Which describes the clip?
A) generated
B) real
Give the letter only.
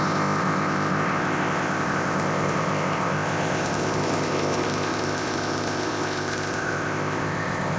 A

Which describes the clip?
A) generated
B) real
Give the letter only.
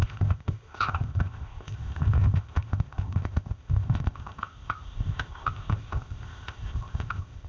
A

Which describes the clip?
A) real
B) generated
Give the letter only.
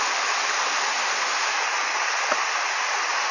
A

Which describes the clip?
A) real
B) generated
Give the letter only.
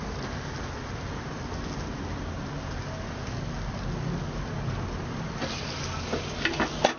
A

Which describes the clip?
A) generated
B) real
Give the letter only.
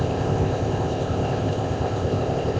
A